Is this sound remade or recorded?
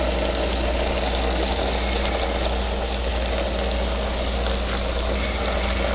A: recorded